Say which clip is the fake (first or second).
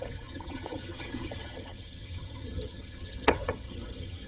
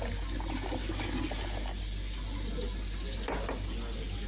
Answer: first